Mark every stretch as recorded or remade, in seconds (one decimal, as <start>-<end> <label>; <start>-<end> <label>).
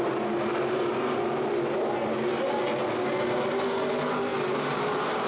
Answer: 0.0-5.3 recorded